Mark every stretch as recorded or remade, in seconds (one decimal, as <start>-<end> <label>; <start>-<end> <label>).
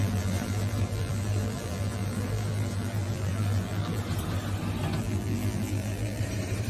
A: 0.0-4.0 remade; 4.0-5.0 recorded; 5.0-6.2 remade; 6.2-6.7 recorded